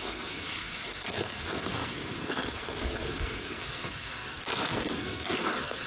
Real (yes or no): no